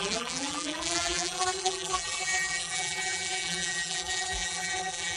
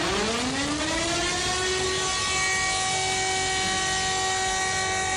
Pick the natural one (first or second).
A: second